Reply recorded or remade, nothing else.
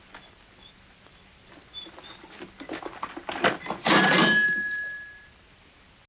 recorded